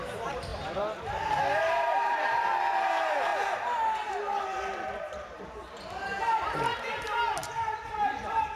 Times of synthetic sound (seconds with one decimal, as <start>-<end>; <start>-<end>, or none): 0.0-3.3; 5.0-8.6